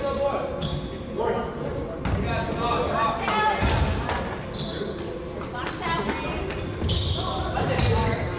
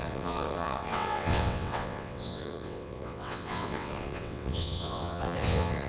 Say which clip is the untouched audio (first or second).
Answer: first